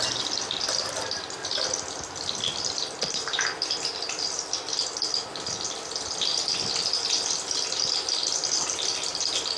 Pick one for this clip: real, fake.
real